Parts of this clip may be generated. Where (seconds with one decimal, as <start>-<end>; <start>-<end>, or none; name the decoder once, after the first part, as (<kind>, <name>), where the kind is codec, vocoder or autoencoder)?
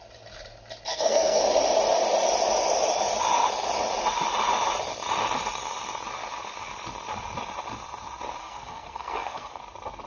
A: 0.9-1.4 (codec, SNAC); 8.4-9.6